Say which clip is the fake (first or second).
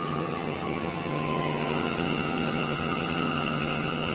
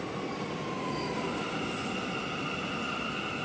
first